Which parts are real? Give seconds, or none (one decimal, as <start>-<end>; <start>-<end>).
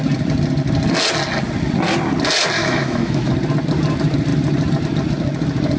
0.0-2.6; 3.3-5.8